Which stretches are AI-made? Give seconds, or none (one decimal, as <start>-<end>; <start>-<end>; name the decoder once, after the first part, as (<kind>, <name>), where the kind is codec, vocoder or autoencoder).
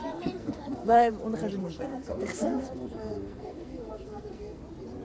0.0-1.1 (codec, SNAC); 1.6-4.6